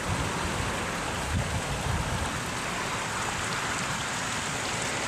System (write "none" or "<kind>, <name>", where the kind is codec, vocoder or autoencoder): none